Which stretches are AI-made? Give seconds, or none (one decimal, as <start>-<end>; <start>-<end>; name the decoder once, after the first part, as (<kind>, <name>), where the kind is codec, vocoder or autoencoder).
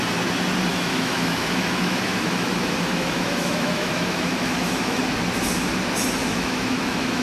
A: 0.7-5.0 (autoencoder, DAC-VAE); 6.2-7.2